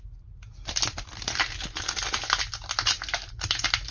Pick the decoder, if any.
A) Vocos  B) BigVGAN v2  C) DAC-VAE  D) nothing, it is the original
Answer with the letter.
D